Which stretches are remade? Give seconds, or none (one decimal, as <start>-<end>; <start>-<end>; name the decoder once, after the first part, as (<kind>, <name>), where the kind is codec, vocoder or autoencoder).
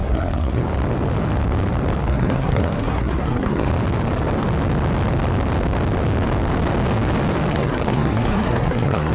0.0-0.6 (codec, SNAC); 2.1-3.7; 7.5-9.1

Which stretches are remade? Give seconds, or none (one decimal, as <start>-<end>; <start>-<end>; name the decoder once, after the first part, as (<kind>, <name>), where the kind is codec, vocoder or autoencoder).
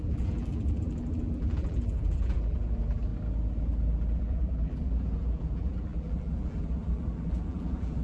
0.0-3.1 (vocoder, BigVGAN v2); 4.2-8.0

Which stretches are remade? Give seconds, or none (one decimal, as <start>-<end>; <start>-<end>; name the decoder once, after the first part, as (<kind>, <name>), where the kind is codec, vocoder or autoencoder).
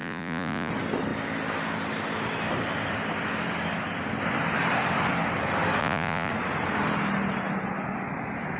0.0-0.7 (vocoder, Vocos); 5.8-6.3